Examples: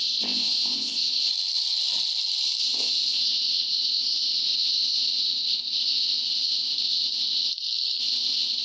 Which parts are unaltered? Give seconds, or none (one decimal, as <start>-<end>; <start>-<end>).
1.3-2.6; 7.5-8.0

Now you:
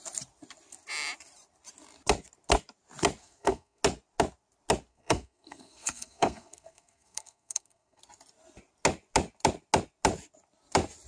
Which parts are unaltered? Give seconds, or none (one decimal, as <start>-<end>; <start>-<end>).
0.0-3.2; 3.8-4.9; 8.0-11.1

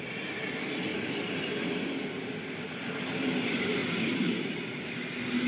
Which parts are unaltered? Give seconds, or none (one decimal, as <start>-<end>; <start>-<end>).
0.0-5.5